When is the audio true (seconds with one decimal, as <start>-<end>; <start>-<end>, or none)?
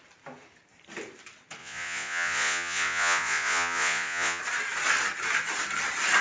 0.0-1.6; 4.4-6.2